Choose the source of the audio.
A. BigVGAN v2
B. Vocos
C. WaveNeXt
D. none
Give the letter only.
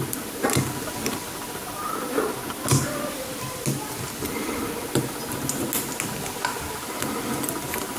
D